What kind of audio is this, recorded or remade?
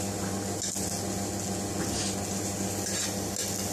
recorded